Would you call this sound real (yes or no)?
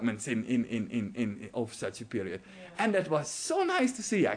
yes